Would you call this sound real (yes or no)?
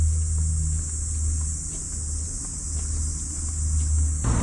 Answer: yes